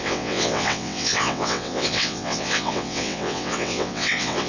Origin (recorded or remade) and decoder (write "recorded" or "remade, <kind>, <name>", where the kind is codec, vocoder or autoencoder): remade, vocoder, WaveNeXt